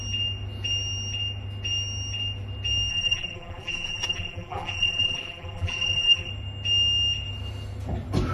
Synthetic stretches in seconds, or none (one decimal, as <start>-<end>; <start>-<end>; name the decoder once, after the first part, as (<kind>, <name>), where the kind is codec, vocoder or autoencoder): 2.9-6.3 (vocoder, BigVGAN v2)